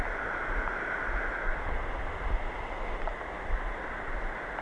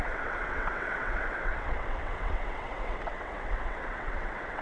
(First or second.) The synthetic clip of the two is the second